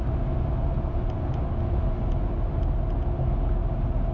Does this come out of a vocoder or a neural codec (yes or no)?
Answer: no